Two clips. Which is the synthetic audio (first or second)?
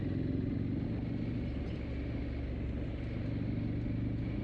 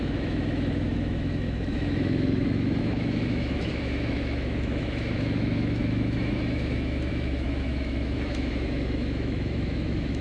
second